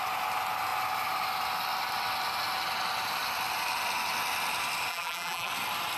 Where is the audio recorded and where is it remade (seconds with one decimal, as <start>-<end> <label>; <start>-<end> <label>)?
0.0-4.9 recorded; 4.9-5.5 remade; 5.5-6.0 recorded